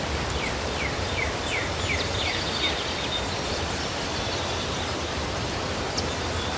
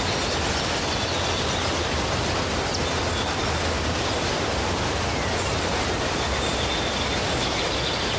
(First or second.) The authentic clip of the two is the second